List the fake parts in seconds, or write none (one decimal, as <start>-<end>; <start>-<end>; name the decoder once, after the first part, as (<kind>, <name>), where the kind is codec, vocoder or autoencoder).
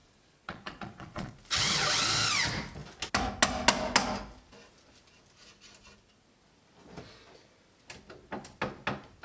0.0-1.3 (vocoder, Vocos)